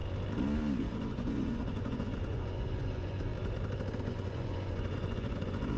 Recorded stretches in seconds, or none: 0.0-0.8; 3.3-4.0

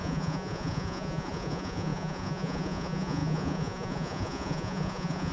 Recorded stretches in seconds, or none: none